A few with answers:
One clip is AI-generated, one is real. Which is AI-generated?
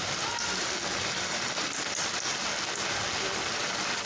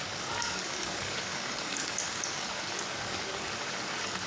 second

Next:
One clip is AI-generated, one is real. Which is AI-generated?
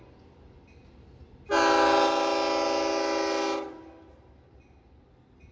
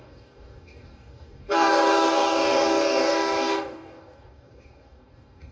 second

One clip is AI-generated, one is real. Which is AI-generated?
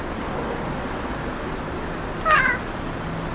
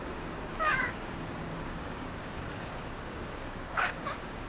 second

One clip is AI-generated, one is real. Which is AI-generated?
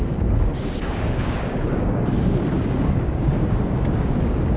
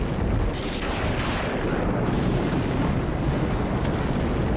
first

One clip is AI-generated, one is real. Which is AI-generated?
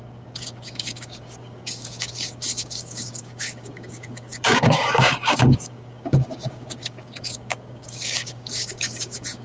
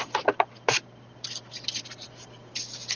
first